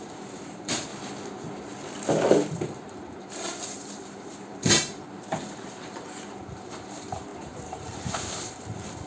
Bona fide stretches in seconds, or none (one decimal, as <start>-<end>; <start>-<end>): 0.9-2.3

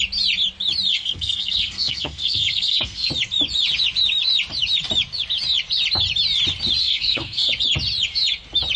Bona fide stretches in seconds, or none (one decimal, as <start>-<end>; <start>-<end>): 0.0-0.9; 3.1-6.8; 7.5-8.8

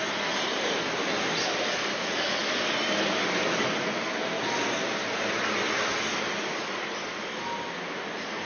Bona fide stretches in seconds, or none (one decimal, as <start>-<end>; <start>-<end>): 0.0-8.5